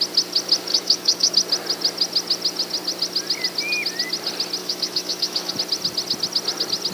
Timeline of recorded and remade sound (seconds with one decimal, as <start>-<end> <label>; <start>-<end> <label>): 0.0-0.7 recorded; 0.7-1.3 remade; 1.3-4.6 recorded; 4.6-5.5 remade; 5.5-6.9 recorded